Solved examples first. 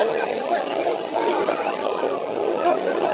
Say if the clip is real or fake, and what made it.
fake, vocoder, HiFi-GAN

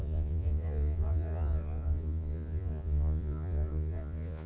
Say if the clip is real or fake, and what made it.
fake, vocoder, Vocos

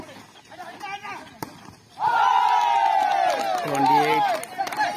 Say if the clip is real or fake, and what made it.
real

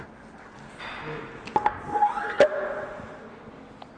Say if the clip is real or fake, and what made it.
real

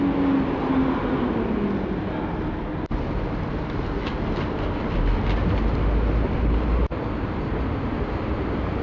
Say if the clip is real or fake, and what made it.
real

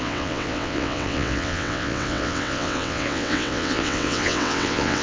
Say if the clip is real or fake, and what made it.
fake, vocoder, WaveNeXt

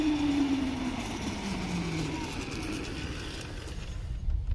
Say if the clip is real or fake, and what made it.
real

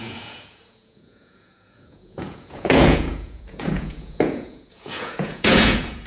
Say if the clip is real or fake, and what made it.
fake, vocoder, Vocos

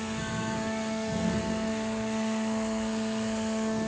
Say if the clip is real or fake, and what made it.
fake, codec, SNAC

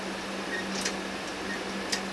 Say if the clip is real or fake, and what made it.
real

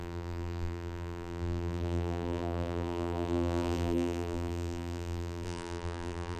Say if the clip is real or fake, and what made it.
fake, vocoder, BigVGAN v2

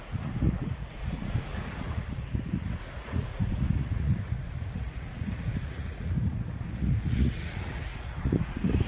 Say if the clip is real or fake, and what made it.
fake, vocoder, Vocos